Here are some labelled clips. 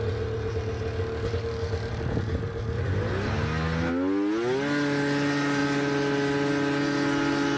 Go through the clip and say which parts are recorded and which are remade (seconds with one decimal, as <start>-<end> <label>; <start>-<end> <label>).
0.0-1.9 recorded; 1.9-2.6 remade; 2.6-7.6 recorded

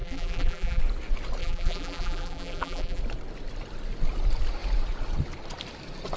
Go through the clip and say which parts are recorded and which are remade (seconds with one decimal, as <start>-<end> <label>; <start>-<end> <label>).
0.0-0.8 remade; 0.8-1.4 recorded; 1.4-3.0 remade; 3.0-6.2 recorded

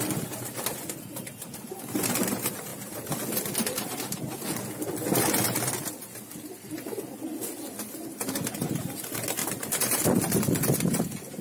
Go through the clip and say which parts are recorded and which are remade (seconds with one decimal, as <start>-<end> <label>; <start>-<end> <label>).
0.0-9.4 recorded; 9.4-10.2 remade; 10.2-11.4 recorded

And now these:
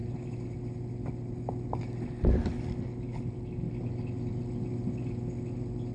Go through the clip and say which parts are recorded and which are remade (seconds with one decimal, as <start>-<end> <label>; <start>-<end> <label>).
0.0-3.2 remade; 3.2-5.9 recorded

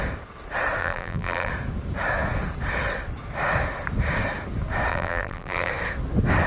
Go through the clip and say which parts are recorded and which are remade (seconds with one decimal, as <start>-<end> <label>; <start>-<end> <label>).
0.0-0.8 recorded; 0.8-1.5 remade; 1.5-4.9 recorded; 4.9-5.7 remade; 5.7-6.5 recorded

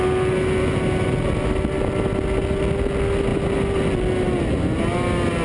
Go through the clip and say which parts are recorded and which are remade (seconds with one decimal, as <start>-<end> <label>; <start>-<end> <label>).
0.0-5.4 recorded

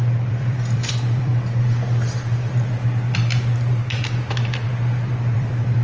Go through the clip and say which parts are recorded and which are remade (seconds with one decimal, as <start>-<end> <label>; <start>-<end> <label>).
0.0-1.3 remade; 1.3-4.8 recorded; 4.8-5.8 remade